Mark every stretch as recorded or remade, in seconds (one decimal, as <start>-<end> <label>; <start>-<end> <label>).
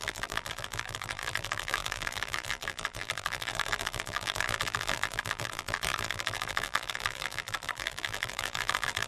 0.0-9.1 remade